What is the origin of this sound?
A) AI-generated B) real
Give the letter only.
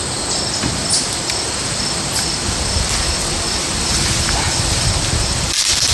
B